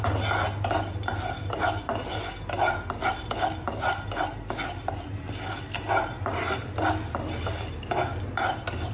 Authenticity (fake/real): real